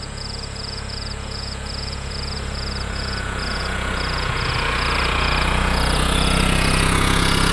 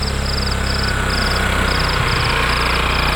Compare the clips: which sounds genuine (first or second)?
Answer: second